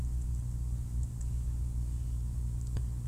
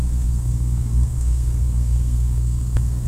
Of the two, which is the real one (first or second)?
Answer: first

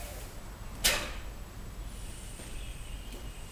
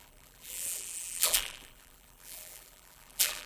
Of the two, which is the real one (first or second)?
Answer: first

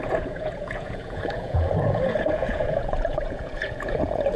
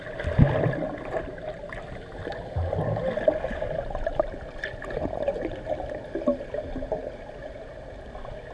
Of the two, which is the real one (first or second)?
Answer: second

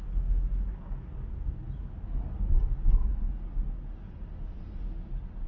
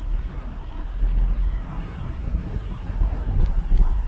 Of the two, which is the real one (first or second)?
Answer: first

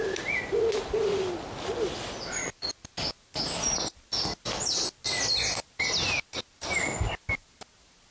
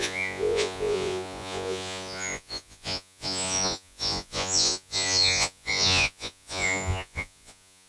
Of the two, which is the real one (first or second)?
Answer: first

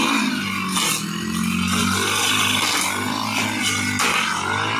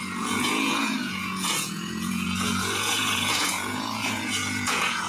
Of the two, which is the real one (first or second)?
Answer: first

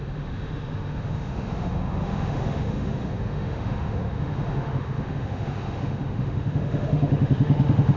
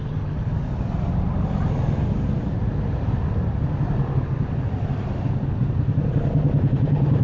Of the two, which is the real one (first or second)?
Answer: second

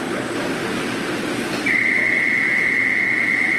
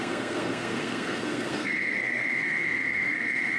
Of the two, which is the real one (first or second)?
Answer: first